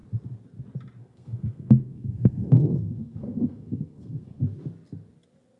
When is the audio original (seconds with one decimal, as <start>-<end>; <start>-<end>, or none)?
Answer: 0.0-1.0; 4.4-5.6